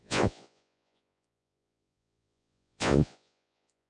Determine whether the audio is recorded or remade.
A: remade